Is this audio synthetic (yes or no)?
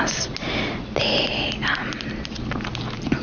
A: no